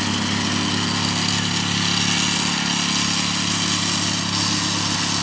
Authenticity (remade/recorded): recorded